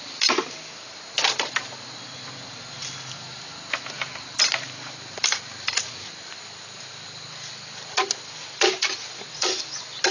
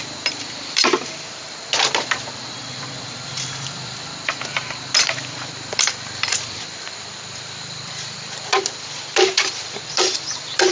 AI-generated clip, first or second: second